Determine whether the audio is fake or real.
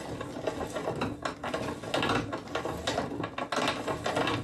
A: real